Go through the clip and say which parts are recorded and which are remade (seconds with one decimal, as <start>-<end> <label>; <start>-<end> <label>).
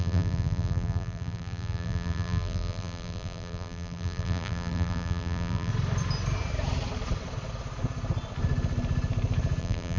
0.0-5.7 remade; 5.7-9.6 recorded; 9.6-10.0 remade